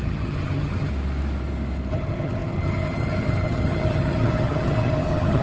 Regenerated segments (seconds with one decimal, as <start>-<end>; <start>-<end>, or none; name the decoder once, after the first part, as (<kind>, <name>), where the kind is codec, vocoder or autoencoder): 0.0-0.9 (vocoder, HiFi-GAN); 1.9-5.4